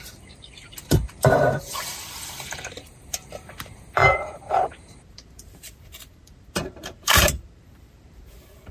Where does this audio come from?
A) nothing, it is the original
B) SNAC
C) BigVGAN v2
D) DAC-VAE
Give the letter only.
C